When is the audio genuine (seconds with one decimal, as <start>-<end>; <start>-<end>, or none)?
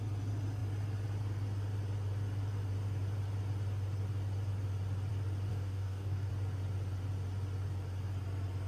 0.0-5.5; 6.3-8.7